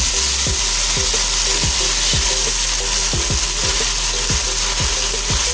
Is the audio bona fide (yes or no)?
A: yes